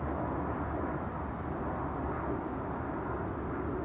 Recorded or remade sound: recorded